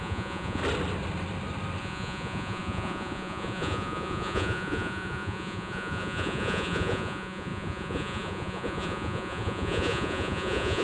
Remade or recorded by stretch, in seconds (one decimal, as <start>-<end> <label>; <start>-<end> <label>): 0.0-0.6 remade; 0.6-1.8 recorded; 1.8-10.8 remade